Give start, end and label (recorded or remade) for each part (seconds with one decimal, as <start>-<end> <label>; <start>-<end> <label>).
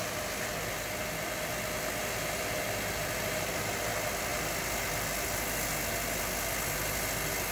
0.0-7.5 recorded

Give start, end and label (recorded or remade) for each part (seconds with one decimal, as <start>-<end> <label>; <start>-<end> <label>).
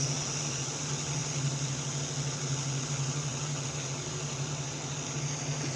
0.0-5.8 recorded